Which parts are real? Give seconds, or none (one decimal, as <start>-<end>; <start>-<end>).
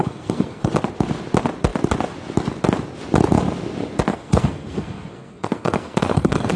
0.7-4.1